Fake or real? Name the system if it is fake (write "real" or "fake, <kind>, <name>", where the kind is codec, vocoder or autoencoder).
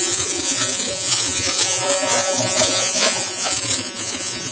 fake, vocoder, Vocos